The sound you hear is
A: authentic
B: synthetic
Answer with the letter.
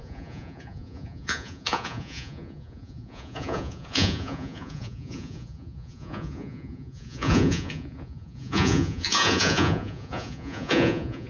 B